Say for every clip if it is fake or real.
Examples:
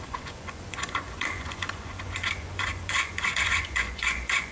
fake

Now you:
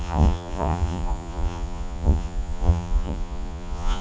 fake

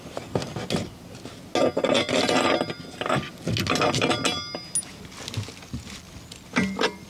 real